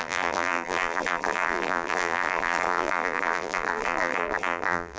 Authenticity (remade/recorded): remade